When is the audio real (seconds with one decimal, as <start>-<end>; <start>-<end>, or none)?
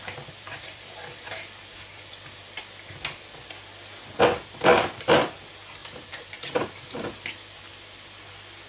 2.6-5.8; 6.4-8.7